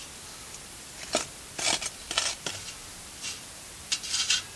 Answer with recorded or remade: recorded